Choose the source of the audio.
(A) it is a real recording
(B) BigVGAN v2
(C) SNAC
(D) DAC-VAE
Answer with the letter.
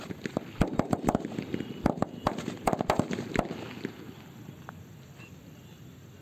A